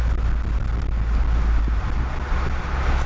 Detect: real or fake real